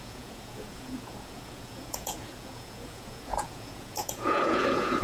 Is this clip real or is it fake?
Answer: fake